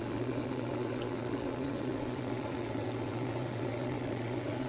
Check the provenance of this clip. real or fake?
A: fake